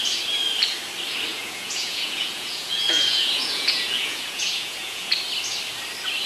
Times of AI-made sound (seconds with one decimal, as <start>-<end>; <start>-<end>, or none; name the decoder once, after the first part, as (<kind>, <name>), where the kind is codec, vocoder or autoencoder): 1.3-5.1 (vocoder, Vocos)